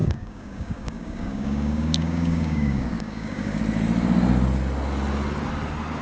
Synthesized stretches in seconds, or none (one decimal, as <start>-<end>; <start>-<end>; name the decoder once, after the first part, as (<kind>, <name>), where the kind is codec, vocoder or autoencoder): 0.0-3.6 (codec, DAC)